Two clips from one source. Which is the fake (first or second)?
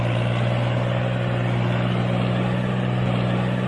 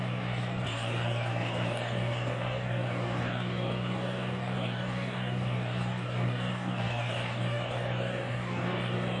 second